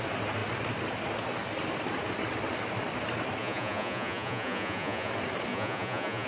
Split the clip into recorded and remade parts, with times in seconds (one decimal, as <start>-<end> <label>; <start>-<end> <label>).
0.0-3.4 recorded; 3.4-5.1 remade; 5.1-5.5 recorded; 5.5-6.3 remade